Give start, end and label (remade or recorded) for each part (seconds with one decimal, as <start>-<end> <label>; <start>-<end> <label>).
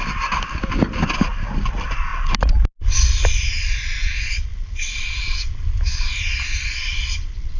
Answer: 0.0-7.6 recorded